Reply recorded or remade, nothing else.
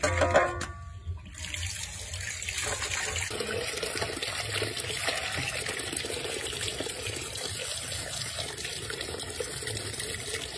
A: recorded